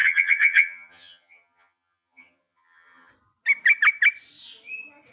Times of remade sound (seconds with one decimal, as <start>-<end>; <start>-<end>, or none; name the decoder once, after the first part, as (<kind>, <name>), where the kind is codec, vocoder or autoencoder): 0.0-3.1 (vocoder, HiFi-GAN)

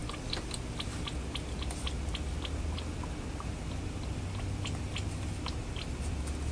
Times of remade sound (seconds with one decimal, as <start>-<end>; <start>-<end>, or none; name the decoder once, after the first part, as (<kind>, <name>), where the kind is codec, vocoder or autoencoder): none

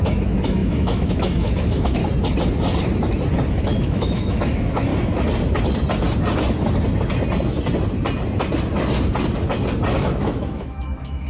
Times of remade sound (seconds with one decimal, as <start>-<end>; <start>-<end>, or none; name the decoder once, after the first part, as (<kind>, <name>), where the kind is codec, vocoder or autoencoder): 0.0-2.0 (autoencoder, DAC-VAE); 3.5-4.9; 9.9-11.3

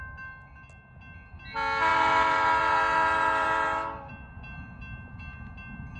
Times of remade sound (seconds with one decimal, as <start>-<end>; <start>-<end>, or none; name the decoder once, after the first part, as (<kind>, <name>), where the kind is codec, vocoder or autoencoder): 1.9-4.1 (vocoder, BigVGAN v2)

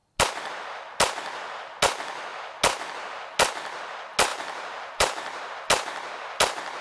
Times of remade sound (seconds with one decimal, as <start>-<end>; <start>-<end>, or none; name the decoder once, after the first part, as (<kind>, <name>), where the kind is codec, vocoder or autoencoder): 4.3-5.5 (vocoder, BigVGAN v2)

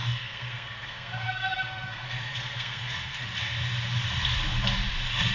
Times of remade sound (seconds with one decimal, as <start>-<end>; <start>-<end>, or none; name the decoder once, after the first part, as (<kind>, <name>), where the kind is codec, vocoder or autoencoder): 0.0-3.2 (codec, SNAC)

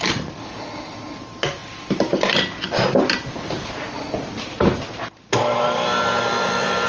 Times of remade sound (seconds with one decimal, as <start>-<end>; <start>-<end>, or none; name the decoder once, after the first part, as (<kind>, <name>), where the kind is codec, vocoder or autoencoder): none

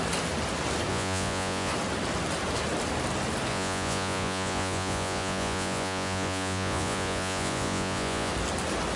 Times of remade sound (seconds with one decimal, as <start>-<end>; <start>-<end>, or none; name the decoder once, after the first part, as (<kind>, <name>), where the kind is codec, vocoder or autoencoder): 0.9-1.7 (vocoder, Vocos); 3.5-8.3